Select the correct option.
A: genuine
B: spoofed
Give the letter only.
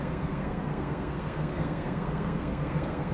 B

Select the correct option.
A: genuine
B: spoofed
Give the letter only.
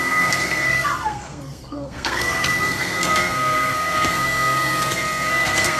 B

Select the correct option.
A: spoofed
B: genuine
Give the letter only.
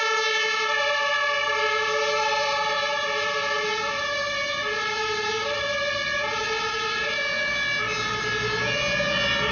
B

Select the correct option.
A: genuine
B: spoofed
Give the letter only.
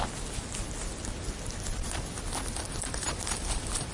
A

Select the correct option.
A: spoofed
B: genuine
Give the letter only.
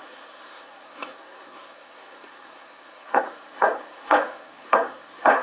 A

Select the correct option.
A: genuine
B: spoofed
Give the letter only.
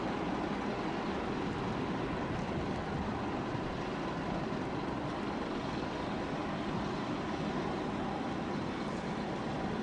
A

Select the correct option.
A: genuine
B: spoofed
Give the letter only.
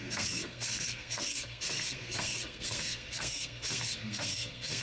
B